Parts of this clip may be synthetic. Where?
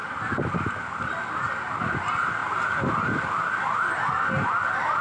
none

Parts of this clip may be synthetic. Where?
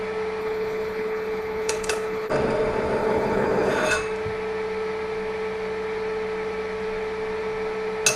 0.4-2.3 (codec, HILCodec); 3.0-3.7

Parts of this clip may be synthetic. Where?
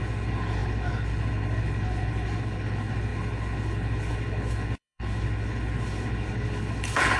0.0-7.2 (codec, HILCodec)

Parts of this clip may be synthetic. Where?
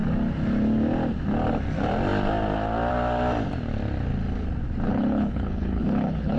4.9-6.4 (codec, HILCodec)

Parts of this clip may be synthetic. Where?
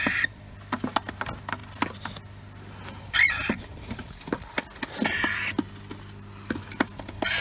none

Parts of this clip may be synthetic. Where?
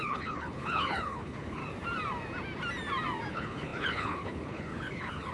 0.0-1.6 (codec, HILCodec); 3.3-5.3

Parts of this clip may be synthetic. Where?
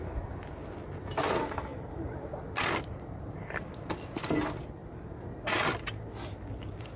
none